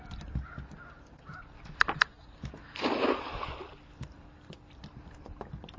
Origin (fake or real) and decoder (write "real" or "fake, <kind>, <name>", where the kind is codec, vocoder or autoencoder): real